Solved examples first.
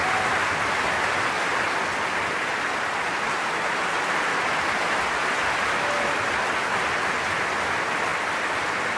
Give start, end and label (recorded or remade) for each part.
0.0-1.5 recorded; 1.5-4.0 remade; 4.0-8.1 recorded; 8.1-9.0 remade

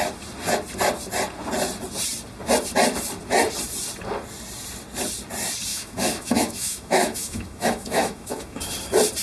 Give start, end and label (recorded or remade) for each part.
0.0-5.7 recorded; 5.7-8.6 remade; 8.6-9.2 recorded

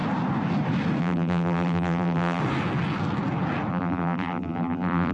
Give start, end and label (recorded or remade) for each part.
0.0-1.0 recorded; 1.0-2.4 remade; 2.4-3.7 recorded; 3.7-5.1 remade

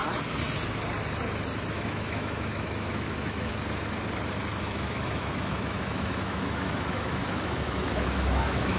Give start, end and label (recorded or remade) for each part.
0.0-1.7 recorded; 1.7-3.5 remade; 3.5-4.6 recorded; 4.6-8.8 remade

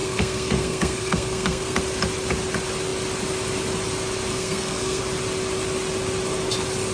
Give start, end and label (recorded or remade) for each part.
0.0-1.8 remade; 1.8-4.3 recorded; 4.3-5.0 remade; 5.0-6.9 recorded